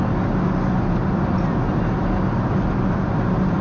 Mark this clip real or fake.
real